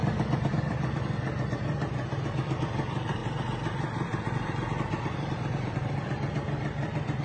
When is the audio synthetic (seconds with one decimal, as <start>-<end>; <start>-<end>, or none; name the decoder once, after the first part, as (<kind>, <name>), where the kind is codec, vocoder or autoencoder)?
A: 0.0-7.2 (vocoder, BigVGAN v2)